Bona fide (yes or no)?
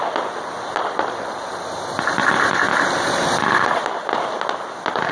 yes